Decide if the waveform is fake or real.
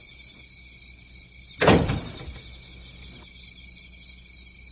real